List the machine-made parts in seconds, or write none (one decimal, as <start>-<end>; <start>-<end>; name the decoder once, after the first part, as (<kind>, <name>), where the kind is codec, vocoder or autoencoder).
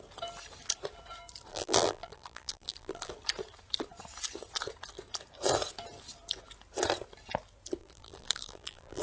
1.5-3.1 (vocoder, BigVGAN v2); 7.8-9.0